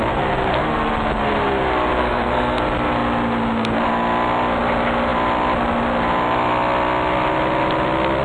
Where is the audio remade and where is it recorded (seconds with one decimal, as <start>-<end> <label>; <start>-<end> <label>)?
0.0-2.0 recorded; 2.0-2.6 remade; 2.6-8.2 recorded